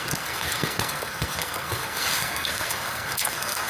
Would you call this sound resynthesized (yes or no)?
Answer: yes